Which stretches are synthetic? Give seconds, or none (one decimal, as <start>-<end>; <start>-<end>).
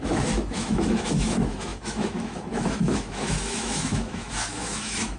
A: 0.0-5.2